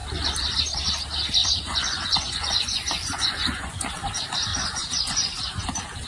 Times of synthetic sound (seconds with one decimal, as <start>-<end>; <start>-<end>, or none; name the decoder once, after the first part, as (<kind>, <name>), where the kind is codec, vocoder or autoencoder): 1.4-3.9 (vocoder, Vocos); 4.5-5.4